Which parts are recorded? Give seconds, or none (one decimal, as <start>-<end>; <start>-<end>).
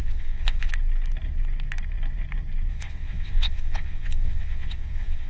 0.7-2.7